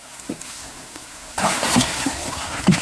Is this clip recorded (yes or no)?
no